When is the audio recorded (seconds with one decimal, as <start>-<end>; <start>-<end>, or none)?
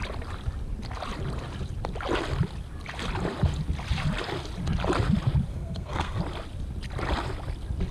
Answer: 0.0-5.5; 6.2-7.9